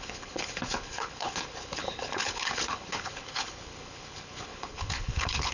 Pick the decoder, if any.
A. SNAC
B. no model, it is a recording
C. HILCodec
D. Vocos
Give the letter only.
C